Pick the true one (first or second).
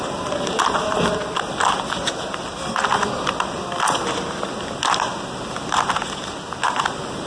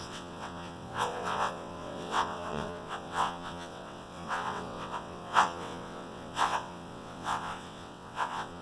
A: first